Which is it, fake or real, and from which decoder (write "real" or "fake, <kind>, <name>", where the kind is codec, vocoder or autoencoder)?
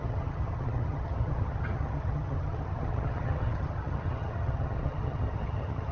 fake, vocoder, HiFi-GAN